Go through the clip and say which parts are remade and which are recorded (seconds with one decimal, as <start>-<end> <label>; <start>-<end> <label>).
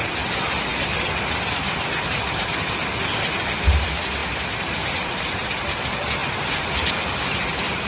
0.0-7.9 recorded